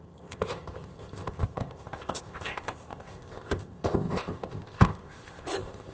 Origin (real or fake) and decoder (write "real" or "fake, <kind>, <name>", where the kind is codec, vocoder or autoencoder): fake, codec, ZipCodec